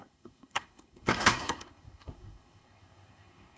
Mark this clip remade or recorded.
remade